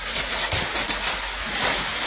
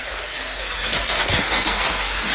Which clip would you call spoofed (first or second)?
second